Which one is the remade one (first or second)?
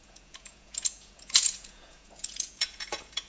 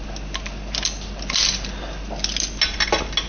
first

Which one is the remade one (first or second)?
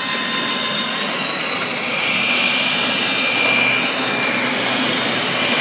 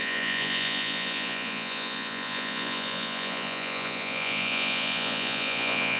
second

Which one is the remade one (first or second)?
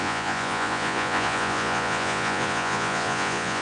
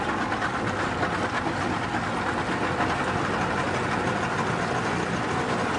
first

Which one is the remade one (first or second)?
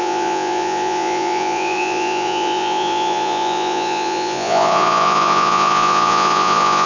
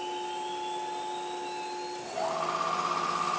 first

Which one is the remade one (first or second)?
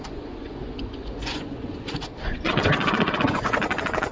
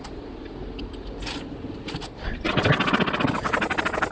first